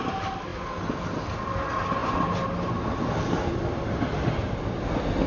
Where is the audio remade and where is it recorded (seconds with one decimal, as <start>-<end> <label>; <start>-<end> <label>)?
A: 0.0-5.3 recorded